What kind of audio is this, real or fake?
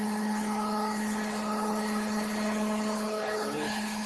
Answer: fake